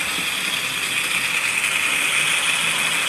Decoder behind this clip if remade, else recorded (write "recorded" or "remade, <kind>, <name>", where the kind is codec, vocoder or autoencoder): recorded